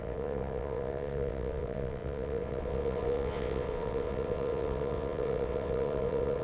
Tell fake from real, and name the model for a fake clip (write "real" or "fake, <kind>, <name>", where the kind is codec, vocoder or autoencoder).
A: fake, vocoder, WaveNeXt